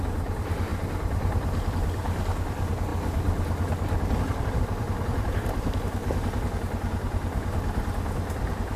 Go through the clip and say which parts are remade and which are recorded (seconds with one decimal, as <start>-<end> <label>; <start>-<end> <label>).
0.0-0.7 remade; 0.7-1.7 recorded; 1.7-2.9 remade; 2.9-4.6 recorded; 4.6-6.0 remade; 6.0-8.3 recorded; 8.3-8.8 remade

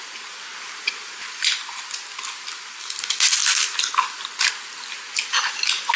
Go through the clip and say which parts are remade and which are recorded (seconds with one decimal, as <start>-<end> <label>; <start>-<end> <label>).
0.0-6.0 recorded

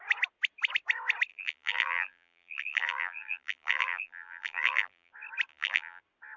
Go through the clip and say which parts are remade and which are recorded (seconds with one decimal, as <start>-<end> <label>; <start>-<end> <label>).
0.0-1.3 recorded; 1.3-5.1 remade; 5.1-5.5 recorded; 5.5-6.0 remade; 6.0-6.4 recorded

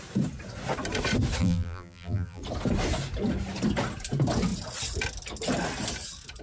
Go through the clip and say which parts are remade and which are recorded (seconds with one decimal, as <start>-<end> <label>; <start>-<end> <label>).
0.0-1.4 recorded; 1.4-2.4 remade; 2.4-6.4 recorded

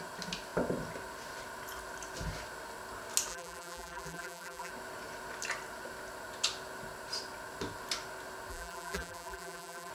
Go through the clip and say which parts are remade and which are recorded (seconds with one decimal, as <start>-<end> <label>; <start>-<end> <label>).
0.0-3.3 recorded; 3.3-4.7 remade; 4.7-8.5 recorded; 8.5-9.9 remade